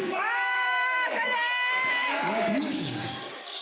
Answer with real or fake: fake